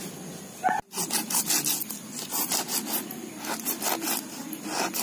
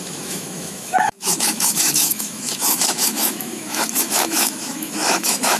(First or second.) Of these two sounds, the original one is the first